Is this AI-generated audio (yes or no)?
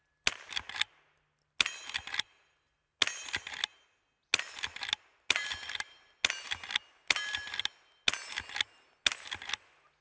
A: no